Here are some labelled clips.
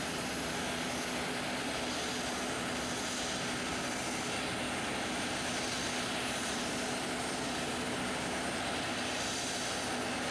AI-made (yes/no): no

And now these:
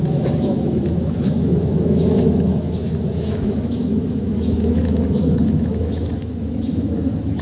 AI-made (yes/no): yes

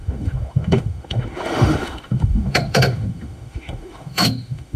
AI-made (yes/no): yes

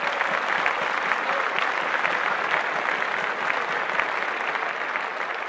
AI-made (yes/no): no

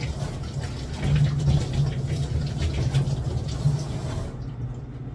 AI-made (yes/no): no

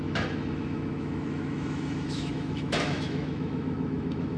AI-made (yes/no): yes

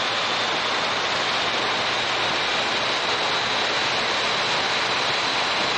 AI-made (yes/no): no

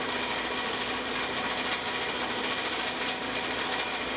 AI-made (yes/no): no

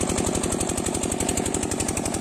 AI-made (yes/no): no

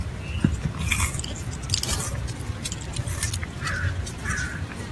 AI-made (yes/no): no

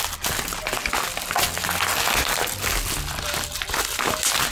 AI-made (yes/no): no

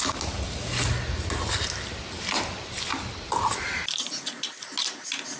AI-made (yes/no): no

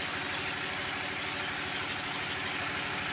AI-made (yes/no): no